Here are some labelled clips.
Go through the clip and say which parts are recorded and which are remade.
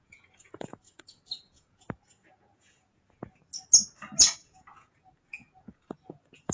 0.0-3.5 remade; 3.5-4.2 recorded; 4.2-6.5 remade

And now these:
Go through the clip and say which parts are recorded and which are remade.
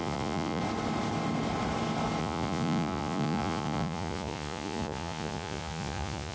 0.0-0.6 remade; 0.6-2.2 recorded; 2.2-6.3 remade